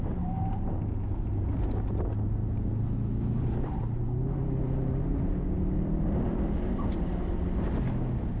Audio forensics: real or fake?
real